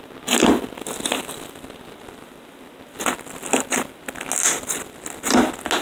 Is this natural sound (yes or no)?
yes